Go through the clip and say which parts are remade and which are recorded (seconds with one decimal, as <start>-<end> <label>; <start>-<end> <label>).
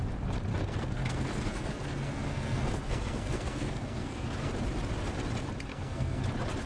0.0-0.5 recorded; 0.5-4.5 remade; 4.5-5.7 recorded; 5.7-6.2 remade; 6.2-6.7 recorded